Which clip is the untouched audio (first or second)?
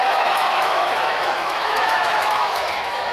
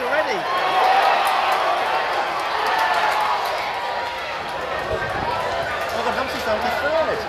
second